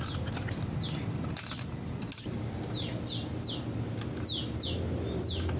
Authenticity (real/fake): real